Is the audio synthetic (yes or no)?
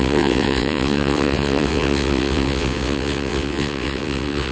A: yes